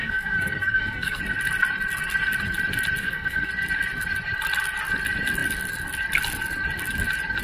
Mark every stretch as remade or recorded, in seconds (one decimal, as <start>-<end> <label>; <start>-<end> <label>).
0.0-1.2 remade; 1.2-3.0 recorded; 3.0-3.5 remade; 3.5-7.4 recorded